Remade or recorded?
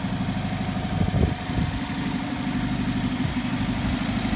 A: recorded